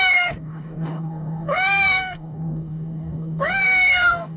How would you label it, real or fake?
fake